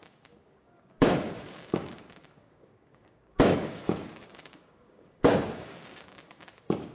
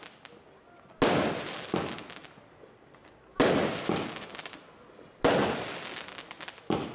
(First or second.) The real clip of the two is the second